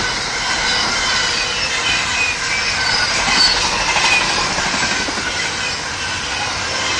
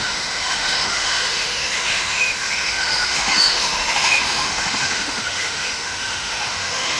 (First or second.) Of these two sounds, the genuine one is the first